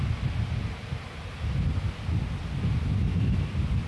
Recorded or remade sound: recorded